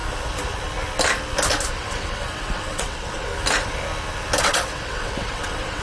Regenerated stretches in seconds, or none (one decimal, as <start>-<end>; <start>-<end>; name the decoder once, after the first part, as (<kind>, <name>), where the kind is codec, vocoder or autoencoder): 1.7-3.3 (vocoder, WaveNeXt); 4.4-5.8